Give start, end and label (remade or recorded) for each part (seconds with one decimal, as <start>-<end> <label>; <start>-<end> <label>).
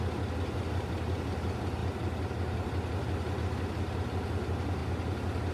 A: 0.0-5.5 recorded